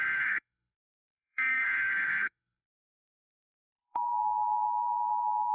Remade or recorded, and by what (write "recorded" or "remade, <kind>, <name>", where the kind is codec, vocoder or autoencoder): remade, codec, SNAC